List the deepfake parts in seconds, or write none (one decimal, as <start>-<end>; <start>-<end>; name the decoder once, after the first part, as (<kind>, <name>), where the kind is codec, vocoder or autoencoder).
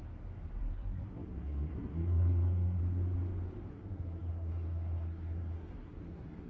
0.6-2.8 (codec, SNAC); 3.7-6.5